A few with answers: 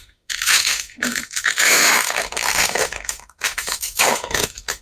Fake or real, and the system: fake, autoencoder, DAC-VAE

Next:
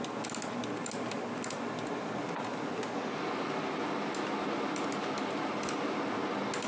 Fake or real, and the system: real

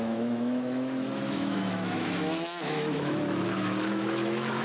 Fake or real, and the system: fake, autoencoder, DAC-VAE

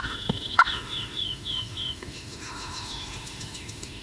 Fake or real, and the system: fake, autoencoder, DAC-VAE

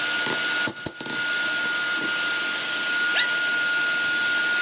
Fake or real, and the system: real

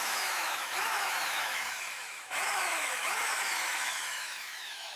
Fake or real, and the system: fake, autoencoder, DAC-VAE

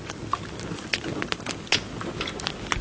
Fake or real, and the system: real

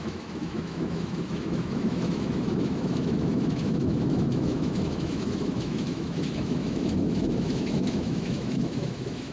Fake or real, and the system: fake, autoencoder, DAC-VAE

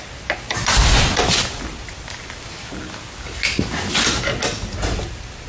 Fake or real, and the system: real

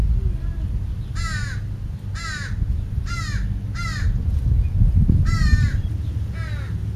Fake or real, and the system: real